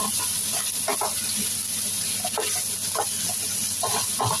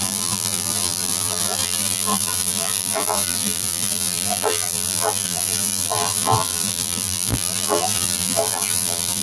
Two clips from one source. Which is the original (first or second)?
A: first